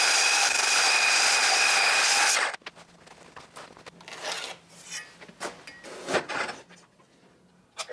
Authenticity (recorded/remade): recorded